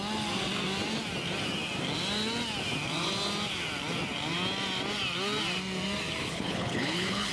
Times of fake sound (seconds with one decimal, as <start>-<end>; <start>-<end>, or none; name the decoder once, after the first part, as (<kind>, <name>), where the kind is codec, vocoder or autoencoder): 6.2-7.3 (codec, HILCodec)